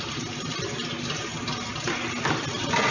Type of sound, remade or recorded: recorded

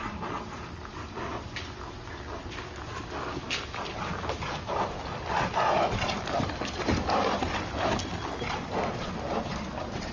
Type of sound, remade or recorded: recorded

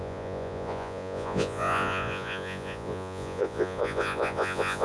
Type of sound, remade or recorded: remade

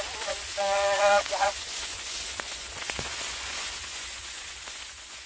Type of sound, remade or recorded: remade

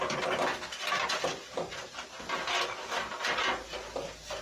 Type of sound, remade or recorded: recorded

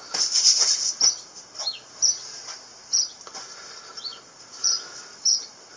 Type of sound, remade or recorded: recorded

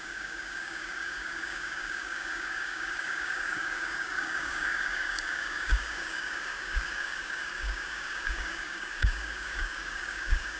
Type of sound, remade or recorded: remade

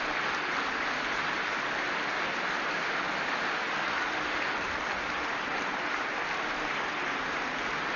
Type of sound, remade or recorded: recorded